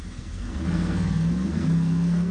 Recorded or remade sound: remade